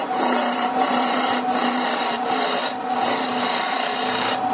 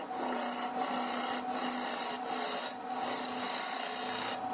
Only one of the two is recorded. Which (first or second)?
second